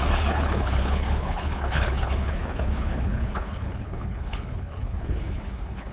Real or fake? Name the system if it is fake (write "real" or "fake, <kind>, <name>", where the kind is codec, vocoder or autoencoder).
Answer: fake, codec, HILCodec